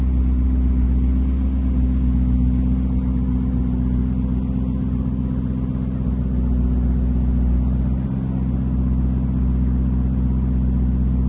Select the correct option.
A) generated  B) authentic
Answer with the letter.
B